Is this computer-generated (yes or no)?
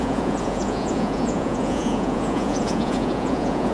yes